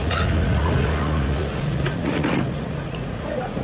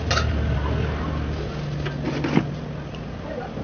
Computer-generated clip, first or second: first